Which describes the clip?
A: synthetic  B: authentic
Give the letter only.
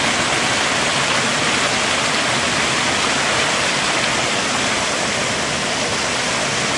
B